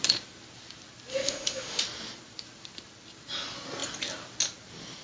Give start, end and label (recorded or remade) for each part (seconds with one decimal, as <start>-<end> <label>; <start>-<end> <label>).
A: 0.0-1.1 recorded; 1.1-1.8 remade; 1.8-5.0 recorded